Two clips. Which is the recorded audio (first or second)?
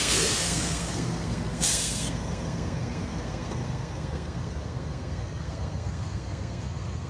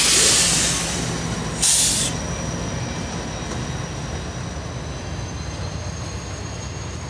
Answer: second